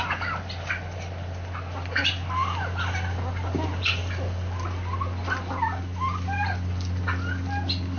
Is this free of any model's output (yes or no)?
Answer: no